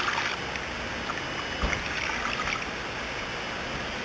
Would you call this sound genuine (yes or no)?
yes